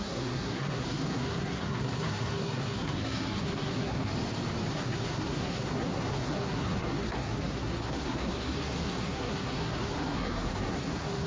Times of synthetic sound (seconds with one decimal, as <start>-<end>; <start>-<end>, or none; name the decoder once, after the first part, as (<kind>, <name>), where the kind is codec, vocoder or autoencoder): 0.0-4.1 (codec, SNAC); 4.7-11.3